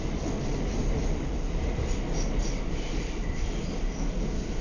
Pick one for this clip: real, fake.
real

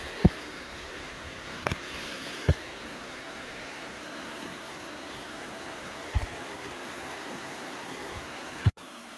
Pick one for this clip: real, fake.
fake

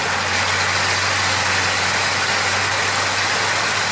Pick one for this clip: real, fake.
real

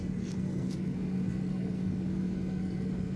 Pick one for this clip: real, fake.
fake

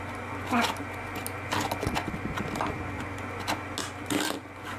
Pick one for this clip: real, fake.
real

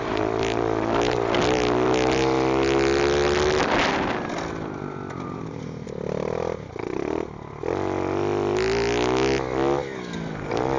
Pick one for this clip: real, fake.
real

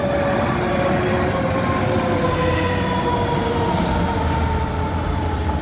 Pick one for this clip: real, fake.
real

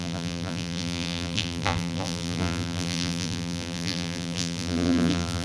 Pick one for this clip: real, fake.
fake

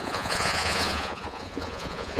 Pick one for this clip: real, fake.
fake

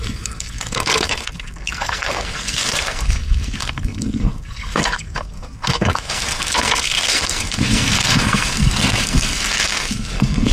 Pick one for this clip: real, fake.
fake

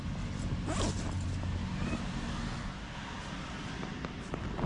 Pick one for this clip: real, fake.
real